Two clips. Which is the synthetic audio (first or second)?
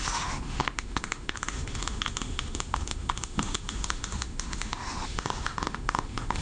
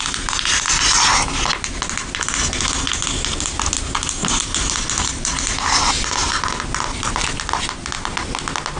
first